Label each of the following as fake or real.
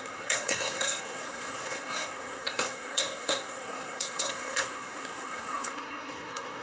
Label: fake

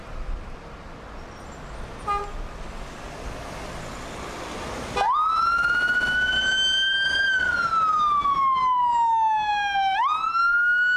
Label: real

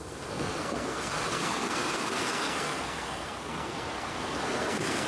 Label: fake